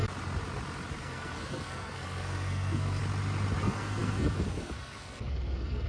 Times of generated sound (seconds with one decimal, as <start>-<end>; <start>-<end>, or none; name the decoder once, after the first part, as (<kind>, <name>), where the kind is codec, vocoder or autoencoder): 1.0-3.0 (codec, SNAC); 3.6-5.9